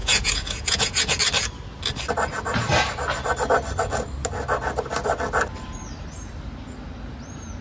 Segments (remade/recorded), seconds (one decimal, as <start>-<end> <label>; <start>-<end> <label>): 0.0-1.2 remade; 1.2-7.6 recorded